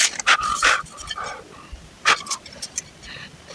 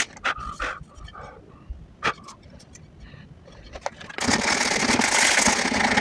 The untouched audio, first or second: second